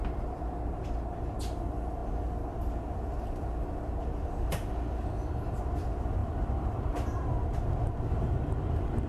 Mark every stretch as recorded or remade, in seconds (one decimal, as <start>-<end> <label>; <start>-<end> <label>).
0.0-6.2 recorded; 6.2-7.3 remade; 7.3-9.1 recorded